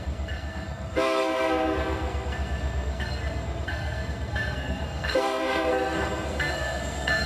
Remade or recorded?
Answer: remade